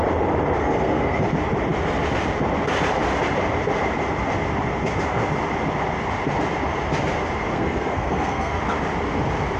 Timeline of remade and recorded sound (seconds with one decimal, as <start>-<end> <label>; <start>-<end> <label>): 0.0-0.6 recorded; 0.6-1.2 remade; 1.2-7.5 recorded; 7.5-8.6 remade; 8.6-9.6 recorded